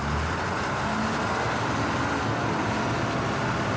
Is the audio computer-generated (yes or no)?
no